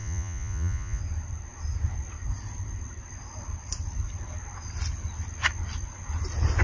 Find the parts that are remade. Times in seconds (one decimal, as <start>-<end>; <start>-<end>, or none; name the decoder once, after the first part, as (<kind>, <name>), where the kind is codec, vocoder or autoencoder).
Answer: 0.0-1.0 (vocoder, Vocos)